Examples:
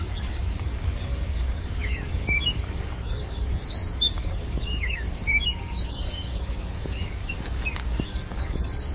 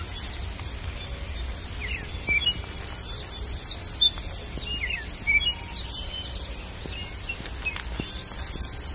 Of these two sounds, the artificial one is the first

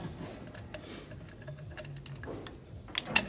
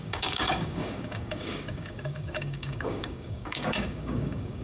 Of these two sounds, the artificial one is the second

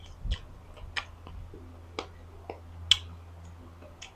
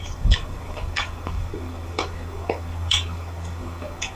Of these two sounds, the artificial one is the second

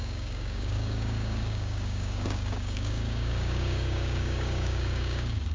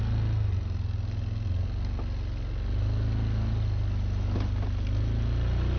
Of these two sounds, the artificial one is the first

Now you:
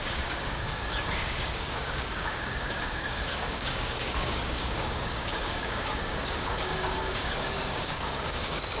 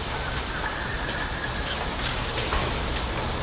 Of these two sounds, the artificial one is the first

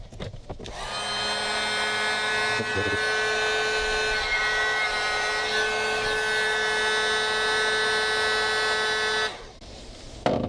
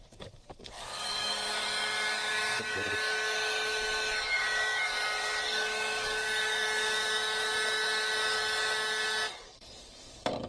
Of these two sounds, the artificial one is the second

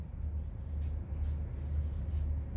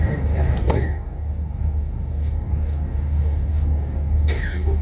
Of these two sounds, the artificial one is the second